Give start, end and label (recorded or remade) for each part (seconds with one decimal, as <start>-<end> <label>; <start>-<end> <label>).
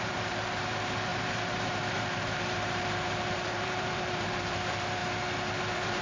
0.0-5.0 remade; 5.0-5.6 recorded; 5.6-6.0 remade